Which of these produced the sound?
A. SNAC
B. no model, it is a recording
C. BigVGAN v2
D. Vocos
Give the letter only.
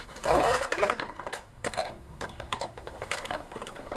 A